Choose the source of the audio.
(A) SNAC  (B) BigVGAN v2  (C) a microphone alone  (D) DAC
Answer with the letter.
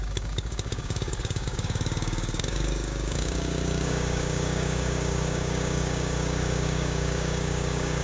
D